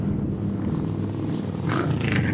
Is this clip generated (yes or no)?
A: no